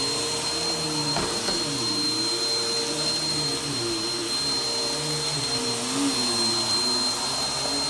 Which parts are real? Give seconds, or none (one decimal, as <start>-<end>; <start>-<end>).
0.0-7.9